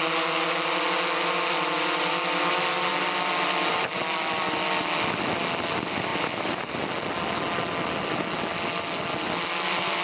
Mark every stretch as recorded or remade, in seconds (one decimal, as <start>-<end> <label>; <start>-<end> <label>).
0.0-10.0 recorded

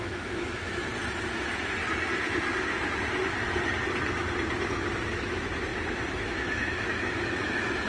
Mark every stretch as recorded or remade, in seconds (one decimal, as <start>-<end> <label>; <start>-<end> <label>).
0.0-0.9 remade; 0.9-5.1 recorded; 5.1-7.9 remade

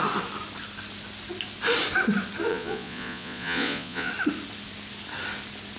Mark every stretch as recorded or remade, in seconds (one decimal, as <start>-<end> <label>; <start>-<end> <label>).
0.0-2.5 recorded; 2.5-4.1 remade; 4.1-5.8 recorded